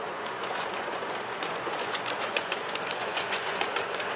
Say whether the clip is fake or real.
fake